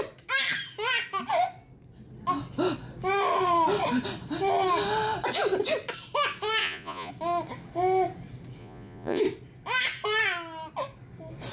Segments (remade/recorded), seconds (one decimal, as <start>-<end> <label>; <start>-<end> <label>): 0.0-6.6 recorded; 6.6-7.1 remade; 7.1-8.6 recorded; 8.6-9.2 remade; 9.2-11.5 recorded